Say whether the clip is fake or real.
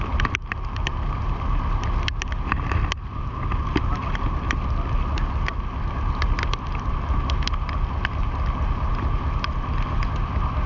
real